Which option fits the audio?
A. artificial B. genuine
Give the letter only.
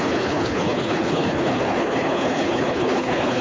A